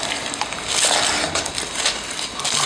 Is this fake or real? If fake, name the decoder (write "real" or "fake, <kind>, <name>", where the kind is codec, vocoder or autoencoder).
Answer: real